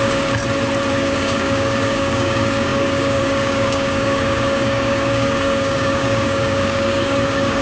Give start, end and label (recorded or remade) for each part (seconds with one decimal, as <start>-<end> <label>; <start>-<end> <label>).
0.0-0.4 remade; 0.4-0.9 recorded; 0.9-7.6 remade

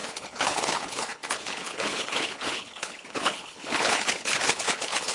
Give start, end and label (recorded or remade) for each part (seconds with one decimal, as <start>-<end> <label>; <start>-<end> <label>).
0.0-5.1 remade

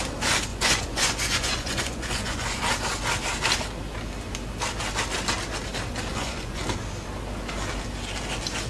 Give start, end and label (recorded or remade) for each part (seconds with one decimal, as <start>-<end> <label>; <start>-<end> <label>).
0.0-0.5 recorded; 0.5-2.6 remade; 2.6-6.1 recorded; 6.1-6.6 remade; 6.6-8.7 recorded

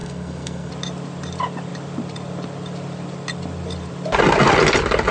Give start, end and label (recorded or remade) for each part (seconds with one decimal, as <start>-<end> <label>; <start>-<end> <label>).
0.0-0.7 remade; 0.7-5.1 recorded

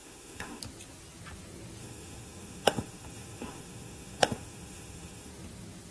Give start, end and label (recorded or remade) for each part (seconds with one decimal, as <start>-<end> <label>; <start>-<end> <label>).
0.0-0.6 remade; 0.6-1.8 recorded; 1.8-5.3 remade; 5.3-5.9 recorded

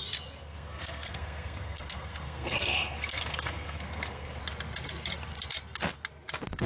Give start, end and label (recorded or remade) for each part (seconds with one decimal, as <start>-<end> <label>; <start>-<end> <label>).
0.0-0.4 recorded; 0.4-4.4 remade; 4.4-6.7 recorded